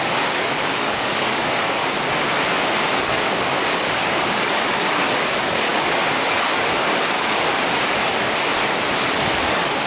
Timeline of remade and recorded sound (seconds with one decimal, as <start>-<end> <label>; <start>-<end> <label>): 0.0-1.8 remade; 1.8-3.0 recorded; 3.0-8.5 remade; 8.5-9.1 recorded; 9.1-9.9 remade